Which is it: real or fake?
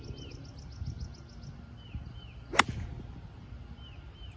real